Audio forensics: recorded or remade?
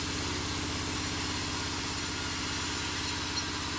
recorded